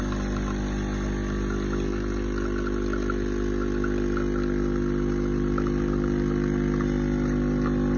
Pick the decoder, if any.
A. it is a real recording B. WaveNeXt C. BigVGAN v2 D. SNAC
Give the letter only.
A